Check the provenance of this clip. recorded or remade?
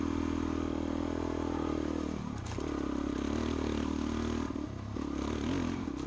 recorded